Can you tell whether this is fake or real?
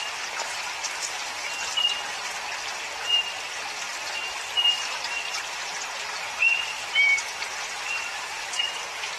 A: fake